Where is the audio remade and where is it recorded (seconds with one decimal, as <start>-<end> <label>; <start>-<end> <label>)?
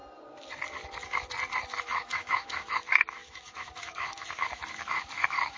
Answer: 0.0-1.8 recorded; 1.8-5.6 remade